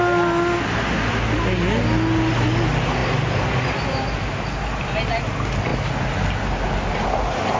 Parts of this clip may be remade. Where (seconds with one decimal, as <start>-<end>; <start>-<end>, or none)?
none